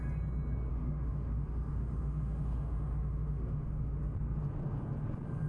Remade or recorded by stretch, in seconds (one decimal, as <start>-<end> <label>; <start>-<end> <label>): 0.0-0.7 recorded; 0.7-4.0 remade; 4.0-5.5 recorded